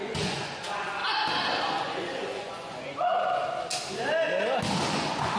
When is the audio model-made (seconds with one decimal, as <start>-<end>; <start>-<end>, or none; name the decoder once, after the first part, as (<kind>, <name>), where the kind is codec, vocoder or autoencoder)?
0.0-1.0 (vocoder, Vocos); 1.8-3.4; 4.9-5.4